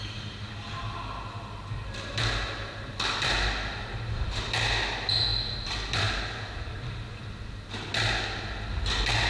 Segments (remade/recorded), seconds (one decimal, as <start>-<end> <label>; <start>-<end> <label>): 0.0-9.3 recorded